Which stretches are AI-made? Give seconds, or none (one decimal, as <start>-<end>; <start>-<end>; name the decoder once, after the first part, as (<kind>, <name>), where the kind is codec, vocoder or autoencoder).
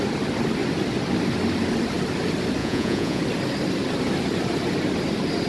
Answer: 2.6-3.2 (vocoder, Vocos)